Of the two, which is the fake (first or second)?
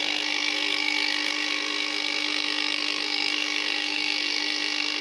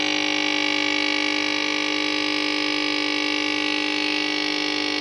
first